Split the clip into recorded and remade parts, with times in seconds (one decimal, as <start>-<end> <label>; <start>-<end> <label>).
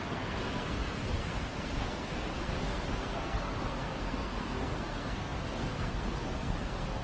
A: 0.0-7.0 remade